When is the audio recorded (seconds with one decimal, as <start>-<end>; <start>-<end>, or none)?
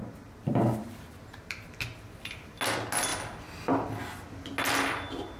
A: 1.7-5.4